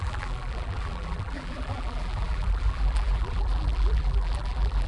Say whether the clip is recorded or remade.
remade